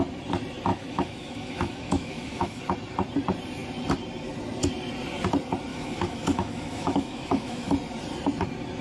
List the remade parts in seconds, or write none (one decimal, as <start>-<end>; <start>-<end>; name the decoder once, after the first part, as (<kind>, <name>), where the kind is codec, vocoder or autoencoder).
0.7-2.6 (autoencoder, DAC-VAE); 5.7-7.7